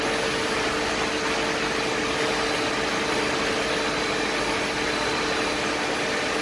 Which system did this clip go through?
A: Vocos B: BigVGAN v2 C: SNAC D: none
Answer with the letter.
D